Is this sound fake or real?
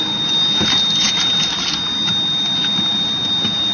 real